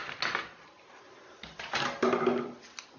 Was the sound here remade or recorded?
recorded